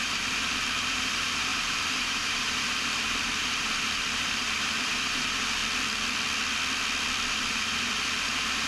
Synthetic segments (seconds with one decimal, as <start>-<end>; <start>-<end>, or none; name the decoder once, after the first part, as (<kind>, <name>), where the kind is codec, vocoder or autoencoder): 0.0-5.6 (vocoder, BigVGAN v2); 7.3-8.7